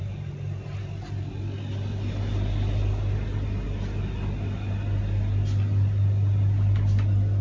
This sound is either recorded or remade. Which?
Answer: recorded